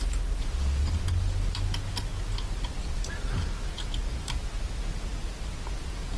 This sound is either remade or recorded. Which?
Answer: recorded